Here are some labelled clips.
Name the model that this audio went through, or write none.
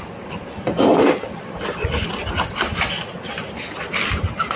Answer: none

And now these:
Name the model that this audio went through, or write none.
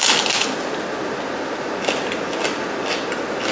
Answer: none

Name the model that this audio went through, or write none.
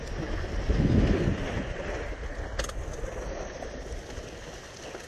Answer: none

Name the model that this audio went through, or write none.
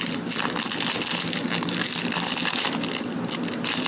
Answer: none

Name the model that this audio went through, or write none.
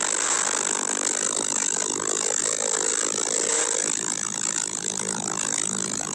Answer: none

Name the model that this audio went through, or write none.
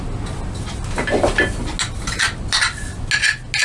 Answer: none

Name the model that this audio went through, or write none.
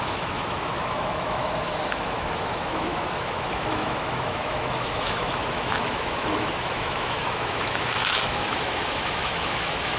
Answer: autoencoder, DAC-VAE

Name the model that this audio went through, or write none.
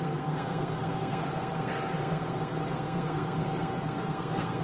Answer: codec, SNAC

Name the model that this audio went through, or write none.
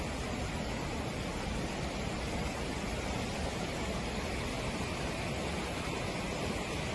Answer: none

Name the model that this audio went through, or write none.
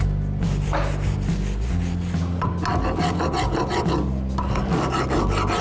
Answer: none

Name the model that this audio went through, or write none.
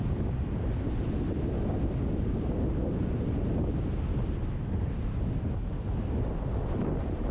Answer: none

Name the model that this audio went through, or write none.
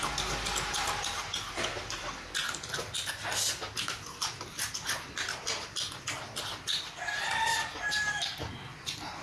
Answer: none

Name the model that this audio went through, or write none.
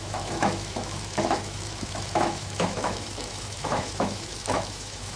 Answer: autoencoder, DAC-VAE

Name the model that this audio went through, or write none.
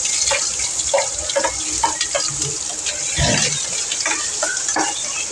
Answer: none